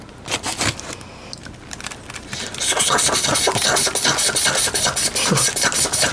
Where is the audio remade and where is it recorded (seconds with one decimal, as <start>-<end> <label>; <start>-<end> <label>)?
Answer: 0.0-6.1 recorded